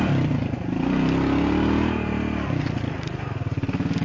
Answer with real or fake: real